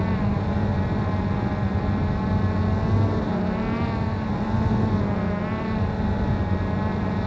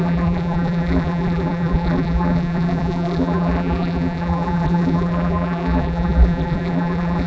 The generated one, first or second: second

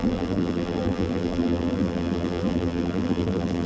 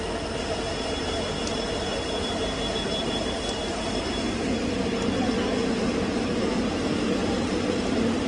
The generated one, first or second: first